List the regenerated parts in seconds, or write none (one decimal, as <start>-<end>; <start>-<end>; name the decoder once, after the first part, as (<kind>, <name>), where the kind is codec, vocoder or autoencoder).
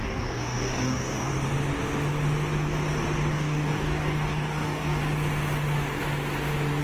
0.0-1.3 (codec, DAC); 3.3-5.0